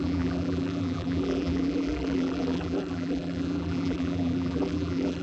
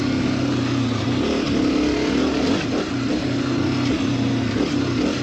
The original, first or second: second